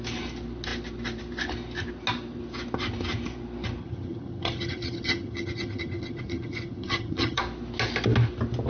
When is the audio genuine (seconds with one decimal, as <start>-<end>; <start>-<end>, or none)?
0.0-3.8; 7.4-8.7